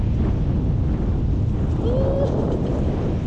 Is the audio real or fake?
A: real